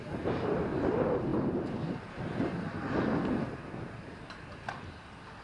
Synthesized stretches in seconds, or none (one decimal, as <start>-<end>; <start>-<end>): none